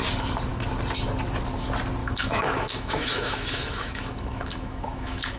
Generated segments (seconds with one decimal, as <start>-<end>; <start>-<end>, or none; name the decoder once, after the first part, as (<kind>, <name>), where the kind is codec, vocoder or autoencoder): 2.0-5.4 (autoencoder, DAC-VAE)

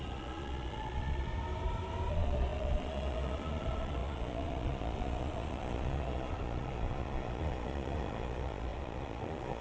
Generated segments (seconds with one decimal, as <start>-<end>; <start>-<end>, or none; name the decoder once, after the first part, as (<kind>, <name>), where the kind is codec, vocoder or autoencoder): 0.0-1.3 (vocoder, Vocos); 2.1-9.6

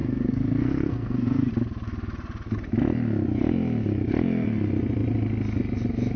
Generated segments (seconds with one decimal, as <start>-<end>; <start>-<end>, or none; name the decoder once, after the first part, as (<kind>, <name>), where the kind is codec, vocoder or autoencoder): 0.0-1.5 (codec, SNAC)

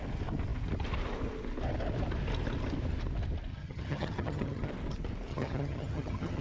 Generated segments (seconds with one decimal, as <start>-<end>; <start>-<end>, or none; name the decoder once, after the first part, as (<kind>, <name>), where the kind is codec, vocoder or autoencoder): 3.5-4.7 (vocoder, HiFi-GAN); 5.3-6.4